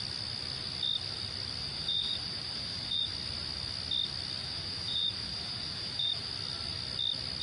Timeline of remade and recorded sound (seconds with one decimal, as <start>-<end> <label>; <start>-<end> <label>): 0.0-1.6 recorded; 1.6-3.1 remade; 3.1-4.4 recorded; 4.4-6.3 remade; 6.3-7.4 recorded